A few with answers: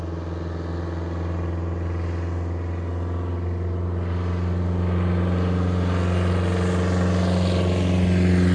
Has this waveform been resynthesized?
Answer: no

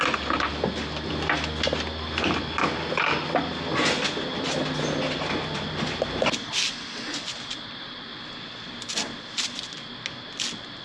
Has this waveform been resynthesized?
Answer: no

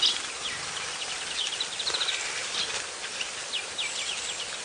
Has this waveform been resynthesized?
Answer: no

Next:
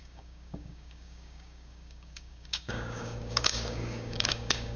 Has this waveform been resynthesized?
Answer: yes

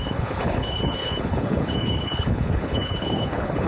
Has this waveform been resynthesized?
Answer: yes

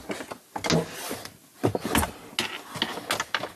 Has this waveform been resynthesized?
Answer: no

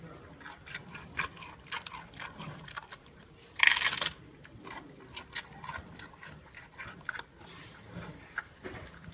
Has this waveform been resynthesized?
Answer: yes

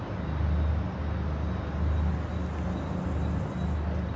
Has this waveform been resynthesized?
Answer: no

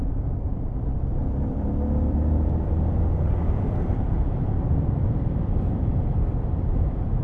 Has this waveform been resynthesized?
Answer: yes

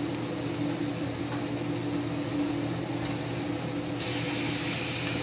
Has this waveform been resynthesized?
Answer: no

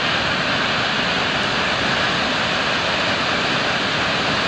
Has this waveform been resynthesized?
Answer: no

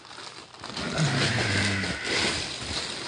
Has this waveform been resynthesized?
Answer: no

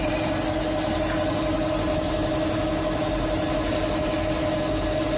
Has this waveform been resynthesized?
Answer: no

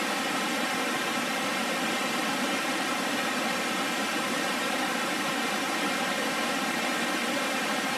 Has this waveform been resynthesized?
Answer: yes